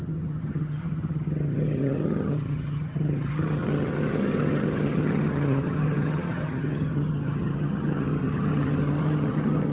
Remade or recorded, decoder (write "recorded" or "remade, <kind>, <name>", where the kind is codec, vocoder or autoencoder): remade, vocoder, HiFi-GAN